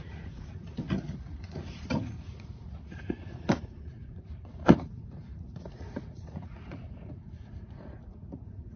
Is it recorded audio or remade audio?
remade